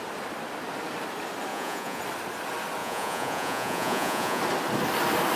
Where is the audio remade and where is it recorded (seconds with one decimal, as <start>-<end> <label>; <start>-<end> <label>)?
0.0-1.5 recorded; 1.5-2.0 remade; 2.0-2.8 recorded; 2.8-4.4 remade; 4.4-5.4 recorded